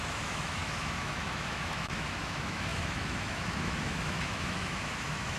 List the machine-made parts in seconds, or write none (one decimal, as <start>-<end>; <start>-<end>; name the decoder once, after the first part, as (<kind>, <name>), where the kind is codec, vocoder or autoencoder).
0.0-5.4 (autoencoder, DAC-VAE)